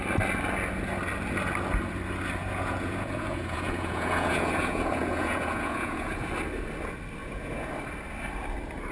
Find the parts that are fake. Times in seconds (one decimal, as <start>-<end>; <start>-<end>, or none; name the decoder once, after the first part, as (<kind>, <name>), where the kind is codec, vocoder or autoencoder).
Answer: 2.4-6.3 (vocoder, Vocos); 7.2-7.7